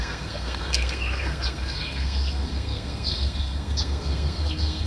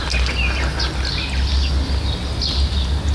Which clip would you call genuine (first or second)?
second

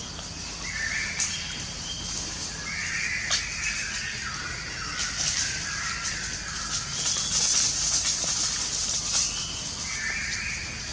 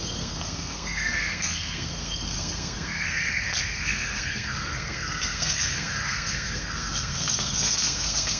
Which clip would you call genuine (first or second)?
first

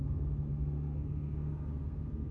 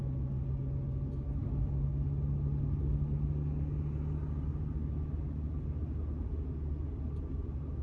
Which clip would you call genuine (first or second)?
second